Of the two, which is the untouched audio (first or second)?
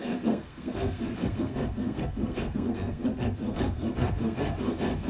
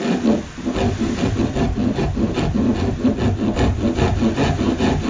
second